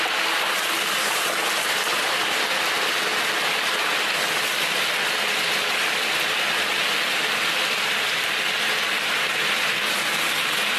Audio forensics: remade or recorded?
recorded